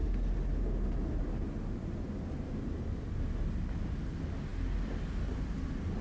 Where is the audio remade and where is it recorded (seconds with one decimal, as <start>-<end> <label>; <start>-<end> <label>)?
0.0-6.0 recorded